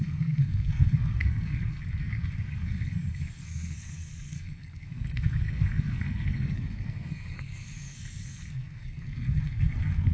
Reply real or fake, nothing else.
fake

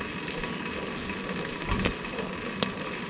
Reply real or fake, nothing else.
real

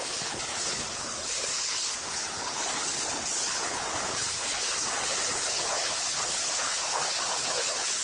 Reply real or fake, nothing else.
fake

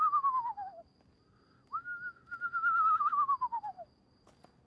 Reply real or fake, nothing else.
real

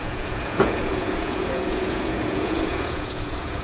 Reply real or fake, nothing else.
fake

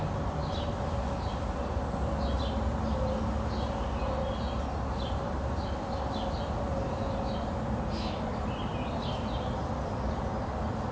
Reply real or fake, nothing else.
real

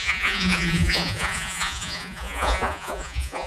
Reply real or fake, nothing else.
fake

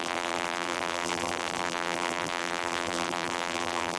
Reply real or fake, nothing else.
fake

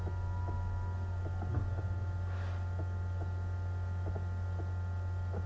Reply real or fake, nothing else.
real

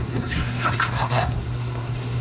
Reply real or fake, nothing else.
fake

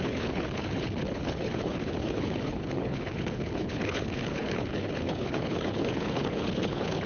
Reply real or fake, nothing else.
fake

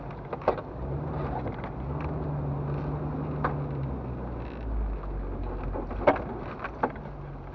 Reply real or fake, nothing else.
real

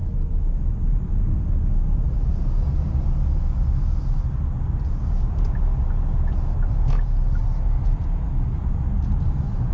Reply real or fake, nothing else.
real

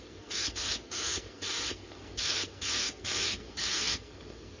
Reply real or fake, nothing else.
fake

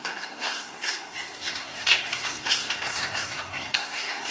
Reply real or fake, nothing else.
fake